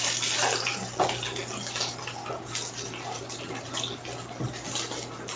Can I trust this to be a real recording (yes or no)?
yes